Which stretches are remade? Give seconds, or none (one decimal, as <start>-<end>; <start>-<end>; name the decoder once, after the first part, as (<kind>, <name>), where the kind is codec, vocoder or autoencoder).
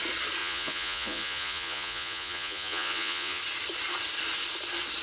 0.4-3.4 (vocoder, Vocos)